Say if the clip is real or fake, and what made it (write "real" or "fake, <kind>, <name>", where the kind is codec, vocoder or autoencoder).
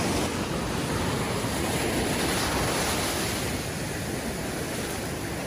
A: real